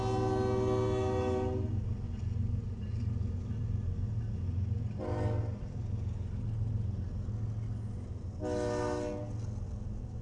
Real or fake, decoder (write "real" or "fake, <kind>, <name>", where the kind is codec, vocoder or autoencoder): real